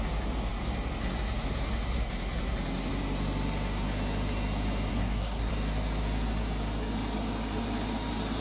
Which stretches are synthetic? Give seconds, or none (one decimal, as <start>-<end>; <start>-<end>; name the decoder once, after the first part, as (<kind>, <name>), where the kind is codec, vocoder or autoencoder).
4.9-5.5 (codec, SNAC)